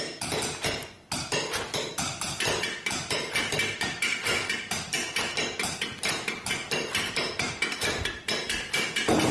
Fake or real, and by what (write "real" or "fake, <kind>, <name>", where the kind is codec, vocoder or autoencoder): real